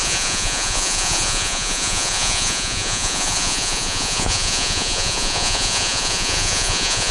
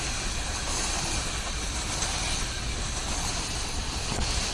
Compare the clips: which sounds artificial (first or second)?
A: first